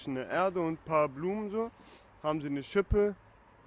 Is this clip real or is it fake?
real